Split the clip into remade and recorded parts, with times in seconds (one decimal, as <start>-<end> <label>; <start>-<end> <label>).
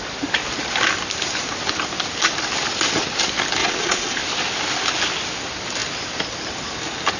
0.0-3.6 recorded; 3.6-4.2 remade; 4.2-7.2 recorded